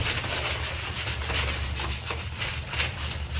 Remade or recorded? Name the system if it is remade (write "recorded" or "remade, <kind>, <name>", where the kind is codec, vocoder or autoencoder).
recorded